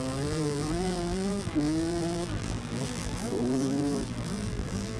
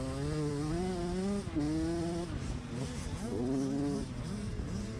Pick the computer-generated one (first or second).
first